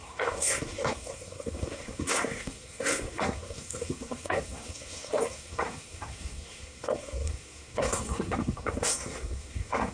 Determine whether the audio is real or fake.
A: fake